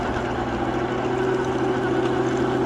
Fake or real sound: real